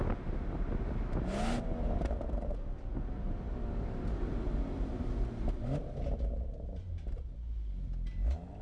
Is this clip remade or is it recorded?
recorded